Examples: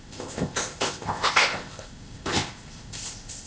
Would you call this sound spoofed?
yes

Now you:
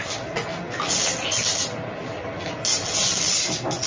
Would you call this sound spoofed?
no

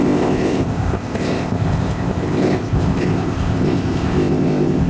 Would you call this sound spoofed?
yes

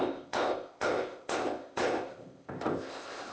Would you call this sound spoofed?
yes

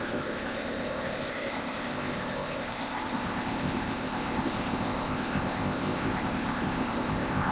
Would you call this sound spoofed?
yes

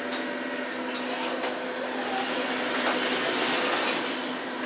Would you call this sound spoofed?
no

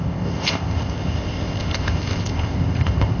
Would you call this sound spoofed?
yes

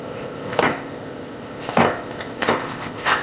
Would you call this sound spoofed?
yes